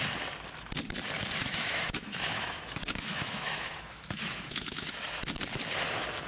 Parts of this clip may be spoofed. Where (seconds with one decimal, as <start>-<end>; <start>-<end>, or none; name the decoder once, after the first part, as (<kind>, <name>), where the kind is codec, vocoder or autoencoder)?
1.4-5.2 (autoencoder, DAC-VAE)